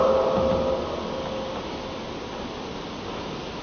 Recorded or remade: recorded